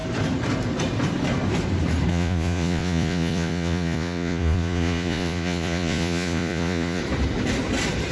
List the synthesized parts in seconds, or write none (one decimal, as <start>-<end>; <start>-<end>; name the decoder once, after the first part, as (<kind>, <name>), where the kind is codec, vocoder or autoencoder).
2.1-7.0 (vocoder, Vocos)